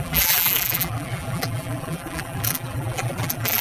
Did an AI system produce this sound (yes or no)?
yes